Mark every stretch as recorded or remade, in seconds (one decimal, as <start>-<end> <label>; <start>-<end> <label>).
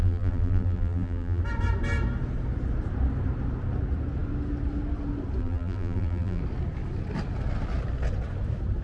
0.0-1.4 remade; 1.4-5.4 recorded; 5.4-6.4 remade; 6.4-8.8 recorded